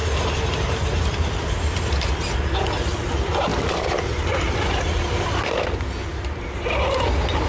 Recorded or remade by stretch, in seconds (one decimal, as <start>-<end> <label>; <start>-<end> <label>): 0.0-7.5 recorded